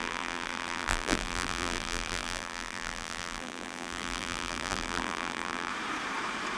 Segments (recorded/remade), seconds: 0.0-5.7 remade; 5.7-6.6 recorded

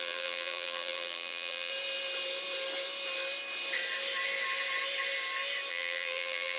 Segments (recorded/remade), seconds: 0.0-1.7 remade; 1.7-5.7 recorded; 5.7-6.6 remade